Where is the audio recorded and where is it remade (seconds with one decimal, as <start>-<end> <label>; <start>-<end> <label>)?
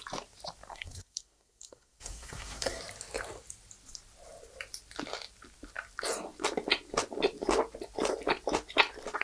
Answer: 0.0-0.7 recorded; 0.7-2.8 remade; 2.8-9.2 recorded